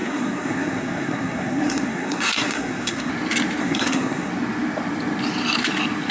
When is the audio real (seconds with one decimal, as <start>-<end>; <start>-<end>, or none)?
3.1-3.6; 4.3-6.1